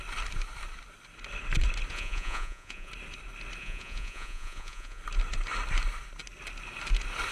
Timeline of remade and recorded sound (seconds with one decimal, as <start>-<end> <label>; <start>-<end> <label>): 0.0-1.9 recorded; 1.9-2.9 remade; 2.9-3.6 recorded; 3.6-5.0 remade; 5.0-7.3 recorded